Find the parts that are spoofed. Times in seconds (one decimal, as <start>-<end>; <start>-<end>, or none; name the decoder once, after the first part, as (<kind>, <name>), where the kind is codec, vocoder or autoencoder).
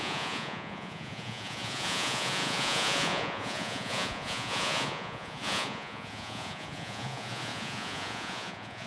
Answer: 0.0-8.9 (vocoder, Vocos)